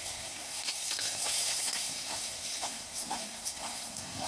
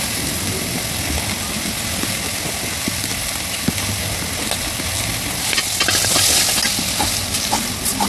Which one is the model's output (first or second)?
first